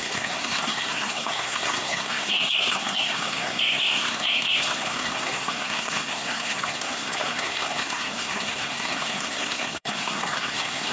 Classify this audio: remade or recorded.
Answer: remade